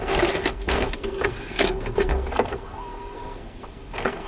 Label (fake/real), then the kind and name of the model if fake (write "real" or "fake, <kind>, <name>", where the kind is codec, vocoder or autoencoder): fake, codec, SNAC